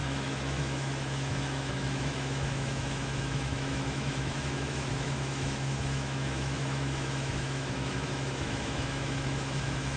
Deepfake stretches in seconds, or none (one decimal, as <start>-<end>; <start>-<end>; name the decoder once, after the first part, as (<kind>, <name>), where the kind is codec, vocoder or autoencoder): 0.0-10.0 (autoencoder, DAC-VAE)

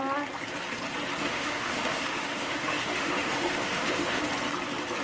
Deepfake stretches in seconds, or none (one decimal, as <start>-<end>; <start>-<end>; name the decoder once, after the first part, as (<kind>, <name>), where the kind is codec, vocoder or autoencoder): 1.2-4.2 (autoencoder, DAC-VAE)

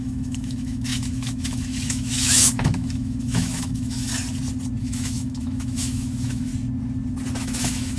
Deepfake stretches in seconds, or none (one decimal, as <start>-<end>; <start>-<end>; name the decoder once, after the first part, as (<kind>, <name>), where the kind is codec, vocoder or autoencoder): 0.0-4.1 (autoencoder, DAC-VAE); 4.8-6.5; 7.4-8.0

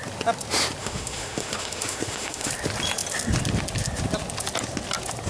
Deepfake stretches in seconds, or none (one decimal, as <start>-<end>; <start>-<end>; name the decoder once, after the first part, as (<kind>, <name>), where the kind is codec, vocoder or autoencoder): 0.8-2.5 (autoencoder, DAC-VAE)

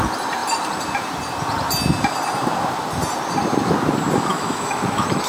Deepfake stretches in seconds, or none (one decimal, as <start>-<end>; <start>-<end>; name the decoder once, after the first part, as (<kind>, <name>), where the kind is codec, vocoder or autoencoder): 4.3-5.3 (autoencoder, DAC-VAE)

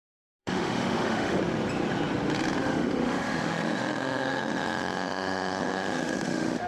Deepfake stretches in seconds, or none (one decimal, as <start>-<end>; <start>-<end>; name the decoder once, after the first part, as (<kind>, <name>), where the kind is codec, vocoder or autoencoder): 0.4-1.4 (autoencoder, DAC-VAE); 2.6-6.7

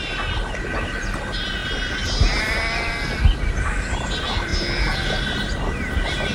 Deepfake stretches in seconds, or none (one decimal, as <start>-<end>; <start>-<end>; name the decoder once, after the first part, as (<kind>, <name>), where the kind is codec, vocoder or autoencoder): none